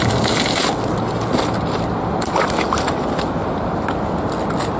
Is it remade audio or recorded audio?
recorded